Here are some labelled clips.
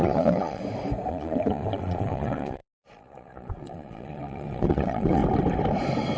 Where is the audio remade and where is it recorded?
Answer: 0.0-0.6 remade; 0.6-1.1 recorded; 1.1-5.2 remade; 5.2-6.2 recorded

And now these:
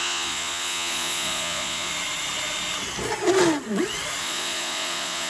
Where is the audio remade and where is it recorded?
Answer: 0.0-1.9 remade; 1.9-4.2 recorded; 4.2-5.3 remade

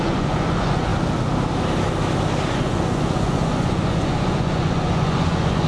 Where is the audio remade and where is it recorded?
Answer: 0.0-0.9 remade; 0.9-2.5 recorded; 2.5-5.7 remade